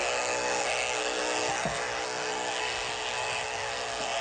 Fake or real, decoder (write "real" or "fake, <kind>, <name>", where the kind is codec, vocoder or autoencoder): fake, codec, SNAC